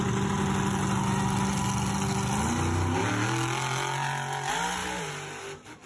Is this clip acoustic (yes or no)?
yes